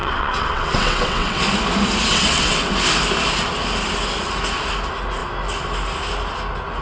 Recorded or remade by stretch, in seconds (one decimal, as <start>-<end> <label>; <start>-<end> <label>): 0.0-1.4 remade; 1.4-2.1 recorded; 2.1-2.7 remade; 2.7-6.8 recorded